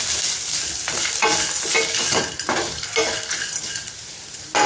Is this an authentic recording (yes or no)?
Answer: yes